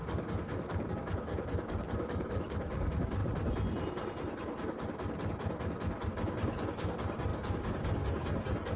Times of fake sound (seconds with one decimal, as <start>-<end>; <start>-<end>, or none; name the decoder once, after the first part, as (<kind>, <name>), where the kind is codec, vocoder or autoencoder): 0.0-3.2 (codec, DAC); 6.1-8.8